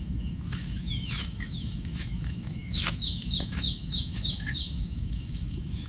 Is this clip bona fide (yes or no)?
no